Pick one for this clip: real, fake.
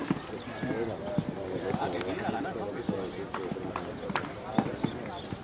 real